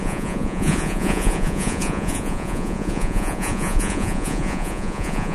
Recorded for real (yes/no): no